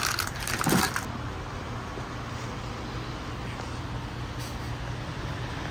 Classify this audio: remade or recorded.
recorded